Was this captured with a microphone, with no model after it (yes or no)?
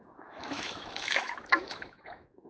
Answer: no